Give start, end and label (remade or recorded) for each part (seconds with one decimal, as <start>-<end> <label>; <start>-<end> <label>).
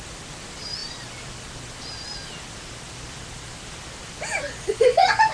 0.0-5.3 recorded